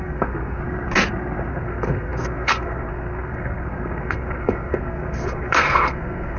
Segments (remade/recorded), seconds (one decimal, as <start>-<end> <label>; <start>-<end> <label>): 0.0-0.6 remade; 0.6-1.5 recorded; 1.5-6.4 remade